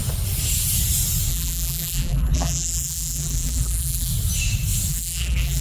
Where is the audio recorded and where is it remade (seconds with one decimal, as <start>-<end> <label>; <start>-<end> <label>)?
0.0-1.3 recorded; 1.3-4.1 remade; 4.1-4.9 recorded; 4.9-5.6 remade